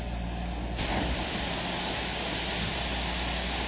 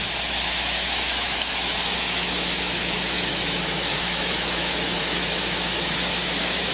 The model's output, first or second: second